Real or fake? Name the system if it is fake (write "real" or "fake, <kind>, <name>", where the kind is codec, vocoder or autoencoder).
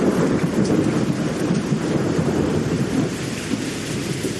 real